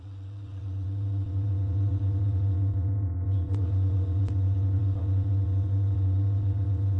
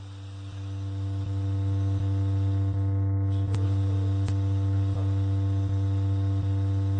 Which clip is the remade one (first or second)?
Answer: first